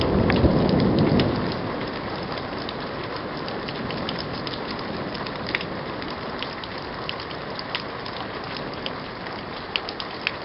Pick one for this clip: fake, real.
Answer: real